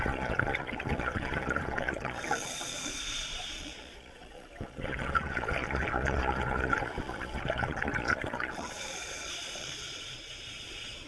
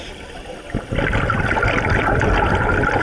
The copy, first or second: first